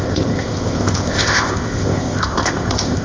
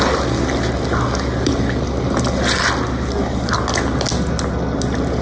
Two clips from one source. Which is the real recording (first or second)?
second